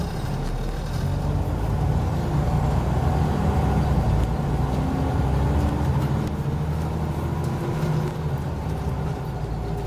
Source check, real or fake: real